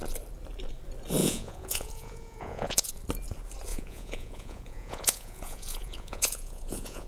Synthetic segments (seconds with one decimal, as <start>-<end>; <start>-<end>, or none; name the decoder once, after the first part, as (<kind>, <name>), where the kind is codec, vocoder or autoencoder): 1.2-2.9 (vocoder, Vocos); 3.7-7.1